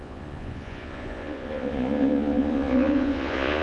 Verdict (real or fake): fake